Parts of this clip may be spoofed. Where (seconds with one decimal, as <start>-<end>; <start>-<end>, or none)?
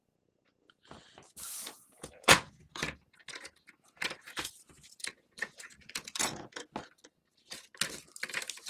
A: 1.5-6.7